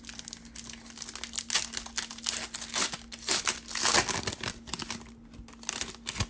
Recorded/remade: recorded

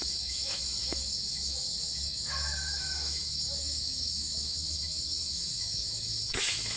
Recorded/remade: remade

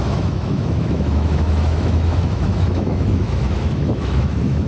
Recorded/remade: remade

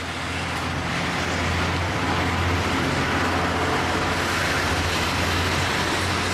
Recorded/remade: recorded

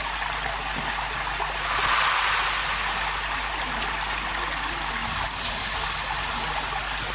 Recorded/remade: recorded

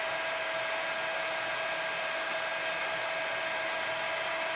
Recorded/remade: recorded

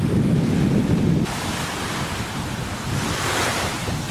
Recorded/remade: recorded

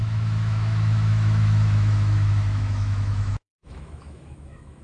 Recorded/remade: remade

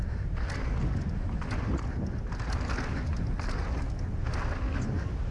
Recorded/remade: recorded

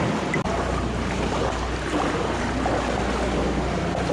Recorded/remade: recorded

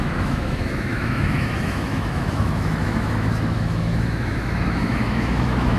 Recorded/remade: remade